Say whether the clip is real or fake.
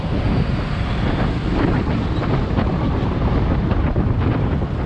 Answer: real